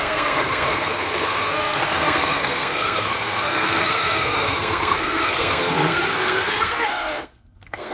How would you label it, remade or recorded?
remade